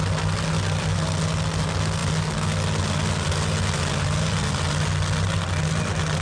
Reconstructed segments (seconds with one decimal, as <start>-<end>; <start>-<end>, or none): none